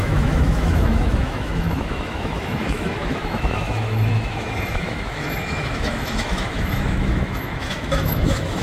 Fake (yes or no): yes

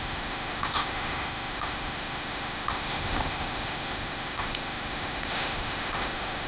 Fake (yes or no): yes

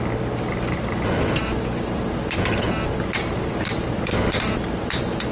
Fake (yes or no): no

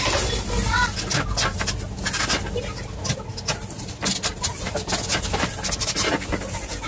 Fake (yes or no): no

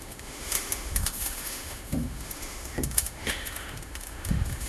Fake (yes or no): yes